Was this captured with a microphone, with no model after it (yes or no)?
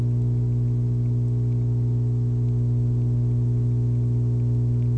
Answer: yes